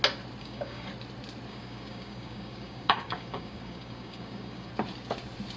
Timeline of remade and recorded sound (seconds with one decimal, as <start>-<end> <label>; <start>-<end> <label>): 0.0-0.4 recorded; 0.4-0.9 remade; 0.9-1.5 recorded; 1.5-4.7 remade; 4.7-5.6 recorded